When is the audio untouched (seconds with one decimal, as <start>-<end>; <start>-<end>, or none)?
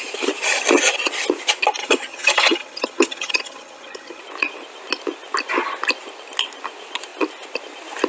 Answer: 0.0-1.8; 4.2-8.1